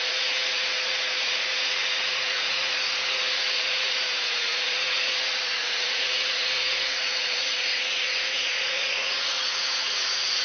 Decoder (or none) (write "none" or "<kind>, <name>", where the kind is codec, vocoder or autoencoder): vocoder, Vocos